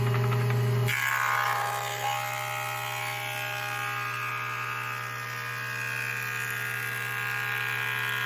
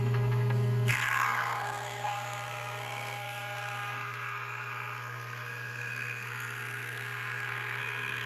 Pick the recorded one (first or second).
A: first